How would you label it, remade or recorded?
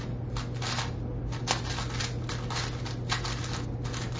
recorded